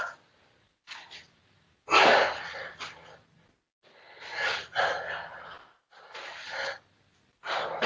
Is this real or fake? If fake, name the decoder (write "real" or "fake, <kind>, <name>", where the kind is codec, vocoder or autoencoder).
real